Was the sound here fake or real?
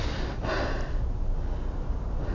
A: real